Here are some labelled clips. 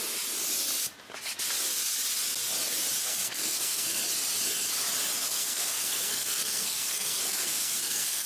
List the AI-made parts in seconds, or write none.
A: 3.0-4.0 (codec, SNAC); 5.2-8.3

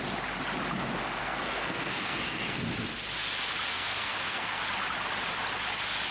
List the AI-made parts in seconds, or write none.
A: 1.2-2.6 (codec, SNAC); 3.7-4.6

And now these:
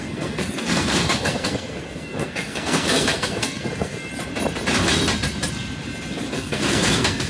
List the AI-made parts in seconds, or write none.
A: 0.0-4.1 (codec, SNAC); 6.3-7.3

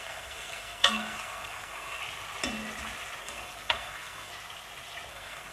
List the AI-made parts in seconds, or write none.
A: 0.0-2.0 (codec, SNAC); 3.2-4.3; 5.1-5.5